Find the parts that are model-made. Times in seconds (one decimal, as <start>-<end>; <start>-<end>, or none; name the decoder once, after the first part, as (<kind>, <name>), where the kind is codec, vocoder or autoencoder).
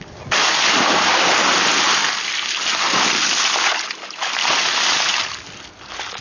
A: none